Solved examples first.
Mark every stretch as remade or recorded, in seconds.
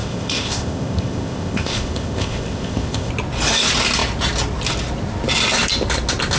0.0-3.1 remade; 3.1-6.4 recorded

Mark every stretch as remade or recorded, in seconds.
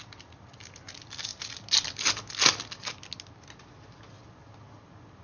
0.0-5.2 recorded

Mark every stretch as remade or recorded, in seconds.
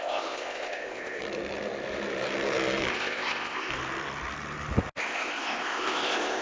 0.0-1.2 remade; 1.2-2.9 recorded; 2.9-3.7 remade; 3.7-5.0 recorded; 5.0-6.4 remade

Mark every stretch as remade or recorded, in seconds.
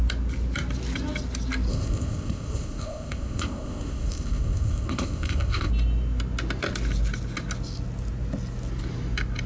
0.0-1.7 recorded; 1.7-5.7 remade; 5.7-9.5 recorded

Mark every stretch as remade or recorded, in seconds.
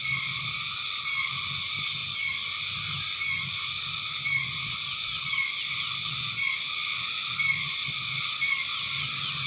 0.0-9.5 recorded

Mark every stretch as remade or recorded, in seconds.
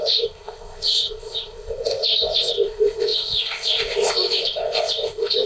0.0-5.5 remade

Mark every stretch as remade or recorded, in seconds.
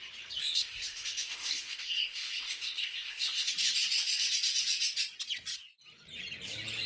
0.0-0.4 recorded; 0.4-3.5 remade; 3.5-6.9 recorded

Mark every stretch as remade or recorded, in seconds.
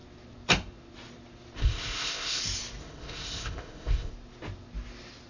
0.0-1.6 recorded; 1.6-2.4 remade; 2.4-2.8 recorded; 2.8-4.1 remade; 4.1-5.3 recorded